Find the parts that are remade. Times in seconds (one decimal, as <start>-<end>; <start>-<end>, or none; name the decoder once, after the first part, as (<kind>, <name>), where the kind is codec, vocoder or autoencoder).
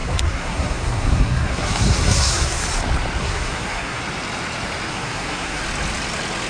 0.0-2.6 (codec, SNAC); 3.2-4.0; 4.9-5.6